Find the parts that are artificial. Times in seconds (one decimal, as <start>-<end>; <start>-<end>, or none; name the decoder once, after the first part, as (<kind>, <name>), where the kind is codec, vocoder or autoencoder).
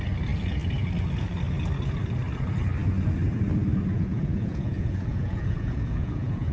3.9-6.5 (vocoder, Vocos)